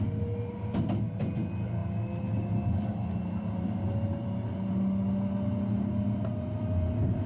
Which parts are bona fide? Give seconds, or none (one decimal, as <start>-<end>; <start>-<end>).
0.0-7.3

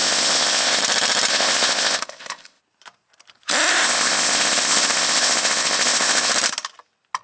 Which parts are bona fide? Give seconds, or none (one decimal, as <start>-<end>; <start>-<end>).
0.8-1.3; 2.6-3.7; 6.3-7.2